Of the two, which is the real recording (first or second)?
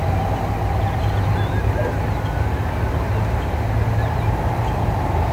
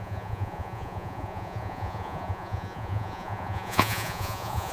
first